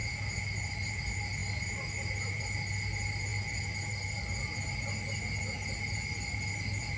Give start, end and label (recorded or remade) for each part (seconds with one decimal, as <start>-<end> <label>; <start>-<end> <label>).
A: 0.0-7.0 recorded